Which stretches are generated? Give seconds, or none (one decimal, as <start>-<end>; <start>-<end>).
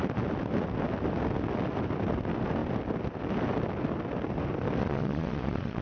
4.8-5.8